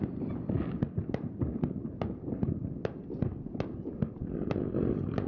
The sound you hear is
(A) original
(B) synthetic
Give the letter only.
A